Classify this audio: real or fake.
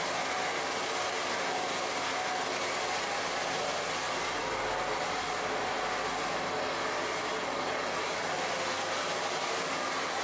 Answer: real